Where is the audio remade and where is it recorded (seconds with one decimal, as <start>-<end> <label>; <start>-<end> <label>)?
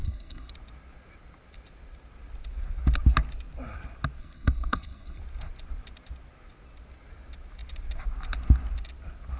0.0-0.5 remade; 0.5-4.2 recorded; 4.2-5.2 remade; 5.2-9.4 recorded